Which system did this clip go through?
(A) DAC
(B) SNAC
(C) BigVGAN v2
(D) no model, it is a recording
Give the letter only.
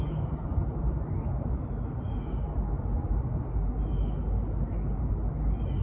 D